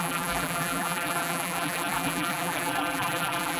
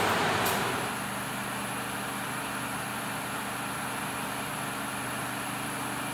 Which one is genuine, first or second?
second